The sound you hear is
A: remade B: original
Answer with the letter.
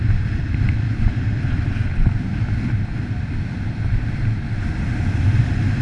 B